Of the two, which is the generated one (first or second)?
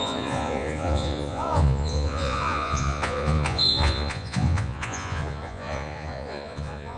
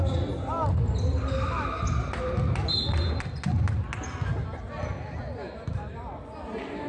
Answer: first